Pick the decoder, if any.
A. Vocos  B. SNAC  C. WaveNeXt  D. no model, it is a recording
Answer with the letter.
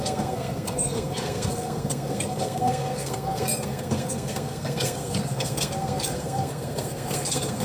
B